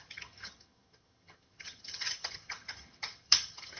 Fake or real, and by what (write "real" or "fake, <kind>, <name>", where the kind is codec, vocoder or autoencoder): fake, vocoder, HiFi-GAN